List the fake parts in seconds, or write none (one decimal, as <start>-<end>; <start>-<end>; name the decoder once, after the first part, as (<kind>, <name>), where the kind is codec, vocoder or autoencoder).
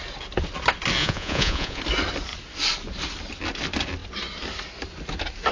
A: 1.0-1.8 (vocoder, Vocos)